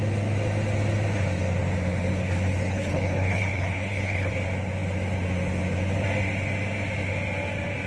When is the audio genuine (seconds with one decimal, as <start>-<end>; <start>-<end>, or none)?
0.0-2.1; 4.3-7.9